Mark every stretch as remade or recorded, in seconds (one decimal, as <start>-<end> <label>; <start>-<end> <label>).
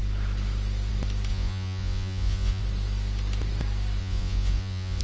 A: 0.0-1.3 recorded; 1.3-2.6 remade; 2.6-4.0 recorded; 4.0-5.0 remade